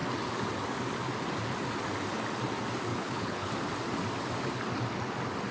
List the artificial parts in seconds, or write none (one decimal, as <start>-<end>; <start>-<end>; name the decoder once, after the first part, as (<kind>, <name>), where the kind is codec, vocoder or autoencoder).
2.9-3.5 (codec, HILCodec)